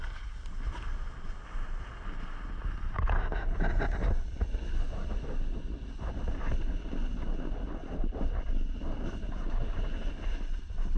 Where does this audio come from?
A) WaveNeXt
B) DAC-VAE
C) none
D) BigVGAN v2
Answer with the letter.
C